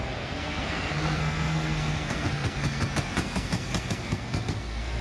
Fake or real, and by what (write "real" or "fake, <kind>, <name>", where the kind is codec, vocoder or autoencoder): fake, codec, SNAC